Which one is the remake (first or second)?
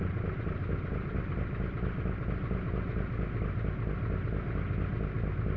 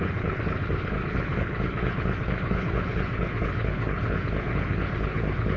second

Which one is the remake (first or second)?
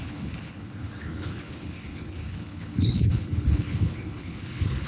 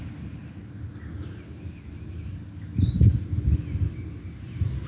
first